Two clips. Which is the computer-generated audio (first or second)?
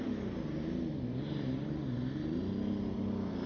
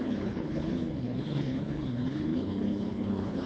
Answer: second